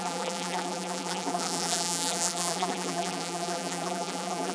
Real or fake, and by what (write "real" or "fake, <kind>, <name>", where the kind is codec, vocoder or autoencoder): fake, vocoder, BigVGAN v2